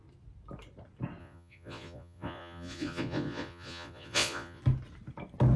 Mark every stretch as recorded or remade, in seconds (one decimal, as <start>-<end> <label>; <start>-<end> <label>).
0.0-1.2 recorded; 1.2-4.6 remade; 4.6-5.6 recorded